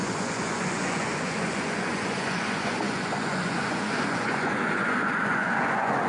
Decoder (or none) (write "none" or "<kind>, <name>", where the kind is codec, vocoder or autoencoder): vocoder, Vocos